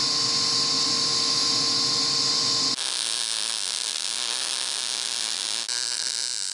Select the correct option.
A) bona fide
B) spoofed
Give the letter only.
A